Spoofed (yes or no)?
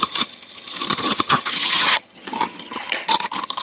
yes